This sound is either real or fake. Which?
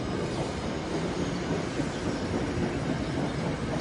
real